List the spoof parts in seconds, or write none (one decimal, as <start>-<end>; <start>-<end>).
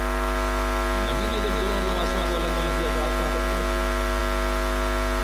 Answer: none